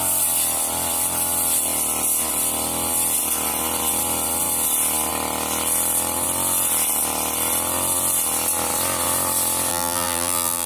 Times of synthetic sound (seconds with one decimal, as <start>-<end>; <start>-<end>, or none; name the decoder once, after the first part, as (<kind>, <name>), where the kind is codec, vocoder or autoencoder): 9.7-10.7 (vocoder, BigVGAN v2)